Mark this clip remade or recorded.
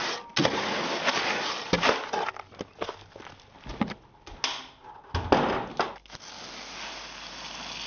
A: recorded